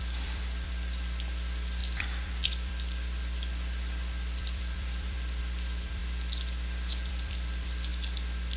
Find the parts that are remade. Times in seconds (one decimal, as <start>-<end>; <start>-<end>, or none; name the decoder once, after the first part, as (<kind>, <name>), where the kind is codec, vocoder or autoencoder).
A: 0.0-6.0 (vocoder, BigVGAN v2); 7.1-7.9